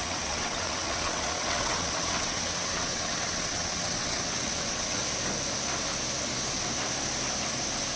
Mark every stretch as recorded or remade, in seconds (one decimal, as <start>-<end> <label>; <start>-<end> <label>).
0.0-5.0 remade; 5.0-8.0 recorded